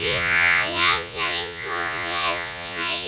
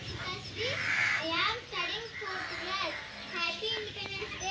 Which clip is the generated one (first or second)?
first